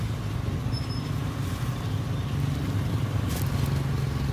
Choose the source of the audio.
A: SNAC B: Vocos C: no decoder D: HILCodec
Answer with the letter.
C